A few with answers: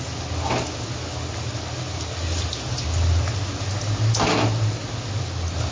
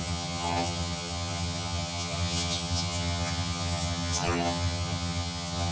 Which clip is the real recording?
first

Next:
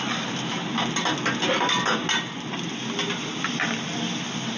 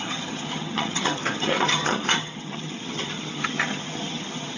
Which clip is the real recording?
first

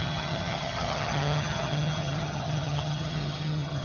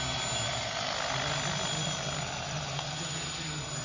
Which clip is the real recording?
second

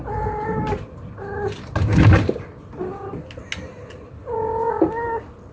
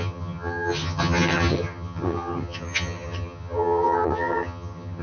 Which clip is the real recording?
first